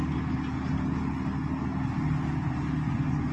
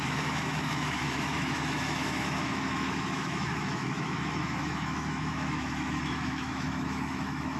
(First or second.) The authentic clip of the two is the first